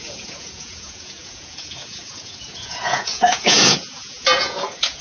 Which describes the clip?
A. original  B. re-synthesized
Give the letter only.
B